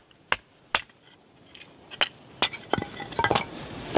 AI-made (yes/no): no